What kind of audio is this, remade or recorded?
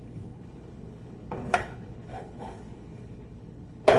remade